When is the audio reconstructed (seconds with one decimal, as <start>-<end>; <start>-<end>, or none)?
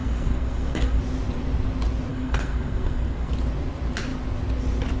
0.0-1.0; 2.1-3.3